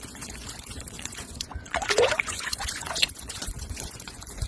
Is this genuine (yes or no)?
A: no